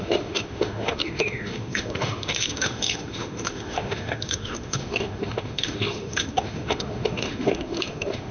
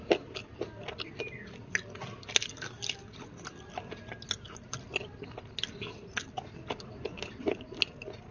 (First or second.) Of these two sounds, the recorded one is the second